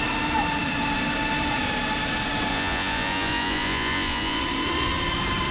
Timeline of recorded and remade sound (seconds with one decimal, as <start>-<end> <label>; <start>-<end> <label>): 0.0-2.5 recorded; 2.5-4.4 remade; 4.4-5.5 recorded